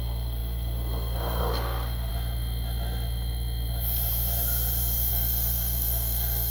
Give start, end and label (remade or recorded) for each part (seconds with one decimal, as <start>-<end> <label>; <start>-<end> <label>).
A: 0.0-2.1 remade; 2.1-5.1 recorded; 5.1-6.5 remade